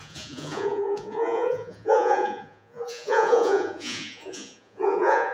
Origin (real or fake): fake